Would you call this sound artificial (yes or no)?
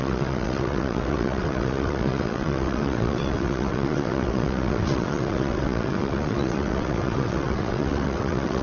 yes